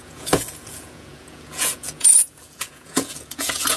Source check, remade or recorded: remade